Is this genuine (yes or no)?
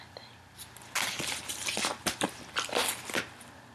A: yes